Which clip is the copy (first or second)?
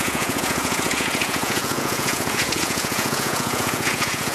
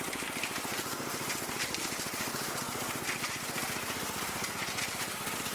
first